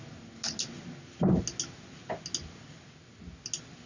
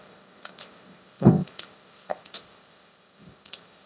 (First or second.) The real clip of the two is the first